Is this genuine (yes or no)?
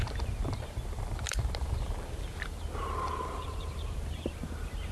no